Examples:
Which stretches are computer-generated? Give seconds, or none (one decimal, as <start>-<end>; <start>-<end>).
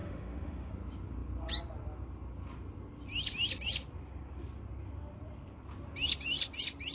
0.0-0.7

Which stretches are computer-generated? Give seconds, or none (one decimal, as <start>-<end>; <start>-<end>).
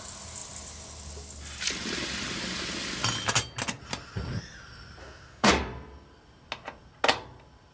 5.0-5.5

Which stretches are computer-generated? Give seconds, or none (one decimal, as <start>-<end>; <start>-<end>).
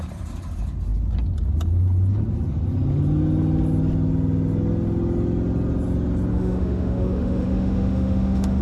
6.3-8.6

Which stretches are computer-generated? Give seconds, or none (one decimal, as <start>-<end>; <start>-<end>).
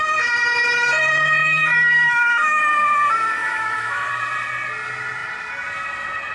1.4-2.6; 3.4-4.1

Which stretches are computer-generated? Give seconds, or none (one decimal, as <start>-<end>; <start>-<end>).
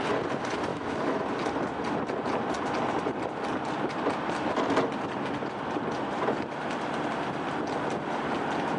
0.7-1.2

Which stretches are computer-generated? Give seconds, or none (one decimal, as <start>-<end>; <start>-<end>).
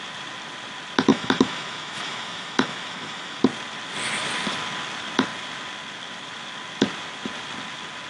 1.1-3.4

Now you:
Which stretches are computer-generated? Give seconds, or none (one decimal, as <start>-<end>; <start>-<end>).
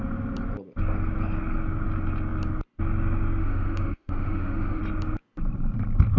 3.4-4.8